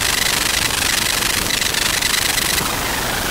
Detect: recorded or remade recorded